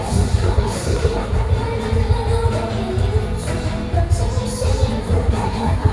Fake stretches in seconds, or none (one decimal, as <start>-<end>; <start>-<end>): 0.0-1.5; 5.0-5.9